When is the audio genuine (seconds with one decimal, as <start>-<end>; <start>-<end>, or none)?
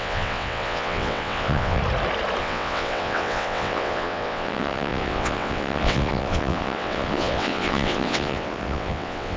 1.8-2.4